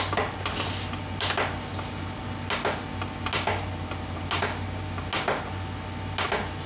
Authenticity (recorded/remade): recorded